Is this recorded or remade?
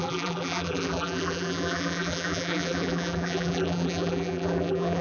remade